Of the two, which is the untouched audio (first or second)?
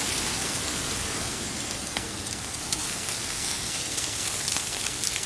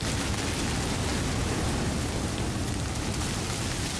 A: second